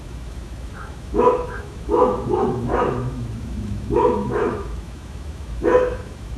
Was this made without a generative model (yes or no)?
no